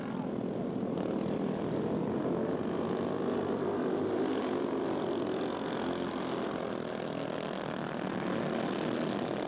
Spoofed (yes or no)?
no